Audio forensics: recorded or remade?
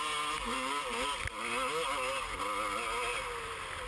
recorded